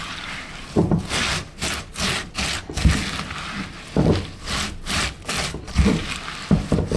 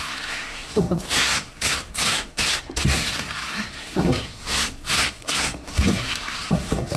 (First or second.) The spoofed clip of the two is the second